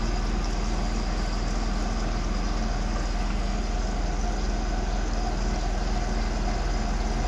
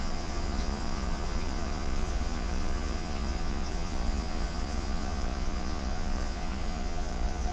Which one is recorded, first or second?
first